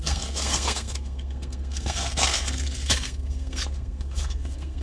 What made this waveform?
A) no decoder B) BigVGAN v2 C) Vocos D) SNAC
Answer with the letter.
D